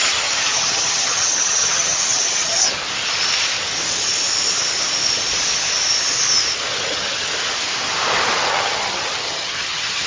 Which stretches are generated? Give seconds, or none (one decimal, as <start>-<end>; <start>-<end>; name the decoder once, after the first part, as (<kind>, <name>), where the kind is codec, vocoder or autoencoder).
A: 0.0-2.8 (vocoder, HiFi-GAN); 6.7-7.3; 8.5-10.1